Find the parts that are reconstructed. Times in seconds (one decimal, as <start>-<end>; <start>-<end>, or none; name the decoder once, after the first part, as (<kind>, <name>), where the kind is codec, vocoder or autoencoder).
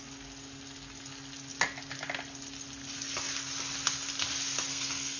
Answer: 4.7-5.2 (codec, SNAC)